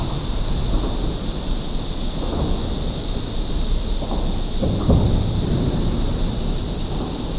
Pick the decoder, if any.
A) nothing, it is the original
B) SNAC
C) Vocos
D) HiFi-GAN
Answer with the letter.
A